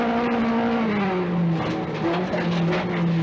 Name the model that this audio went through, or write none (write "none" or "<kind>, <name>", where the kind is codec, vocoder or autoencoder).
none